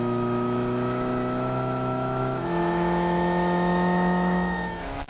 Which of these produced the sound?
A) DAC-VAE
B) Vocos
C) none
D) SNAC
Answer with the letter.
A